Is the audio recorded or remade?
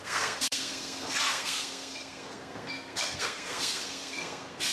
remade